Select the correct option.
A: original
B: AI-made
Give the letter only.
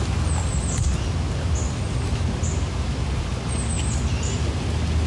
A